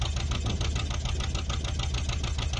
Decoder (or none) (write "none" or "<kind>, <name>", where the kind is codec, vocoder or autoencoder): none